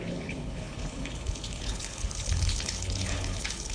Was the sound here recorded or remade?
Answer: remade